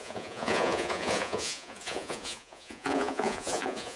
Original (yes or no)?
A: no